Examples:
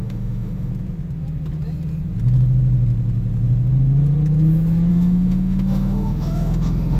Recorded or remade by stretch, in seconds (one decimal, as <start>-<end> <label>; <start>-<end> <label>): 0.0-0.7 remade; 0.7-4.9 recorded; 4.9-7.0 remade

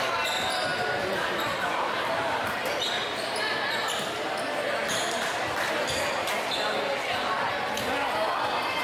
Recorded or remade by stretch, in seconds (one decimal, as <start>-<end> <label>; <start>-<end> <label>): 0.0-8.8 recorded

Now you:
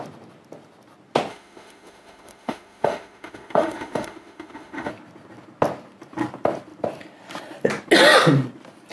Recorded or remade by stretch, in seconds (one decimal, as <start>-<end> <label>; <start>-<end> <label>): 0.0-1.3 recorded; 1.3-4.9 remade; 4.9-8.9 recorded

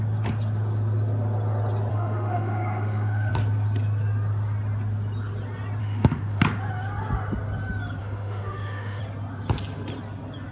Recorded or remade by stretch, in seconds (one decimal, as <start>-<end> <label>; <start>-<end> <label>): 0.0-1.9 recorded; 1.9-3.3 remade; 3.3-5.8 recorded; 5.8-6.4 remade; 6.4-8.0 recorded; 8.0-9.0 remade; 9.0-10.5 recorded

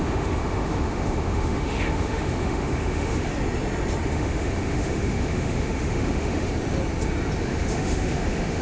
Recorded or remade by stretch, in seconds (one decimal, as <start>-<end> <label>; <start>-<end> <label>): 0.0-3.3 remade; 3.3-4.1 recorded; 4.1-6.5 remade; 6.5-7.5 recorded; 7.5-8.6 remade

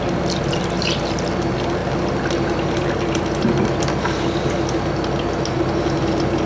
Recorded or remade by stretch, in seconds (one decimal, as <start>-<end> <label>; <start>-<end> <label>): 0.0-6.5 recorded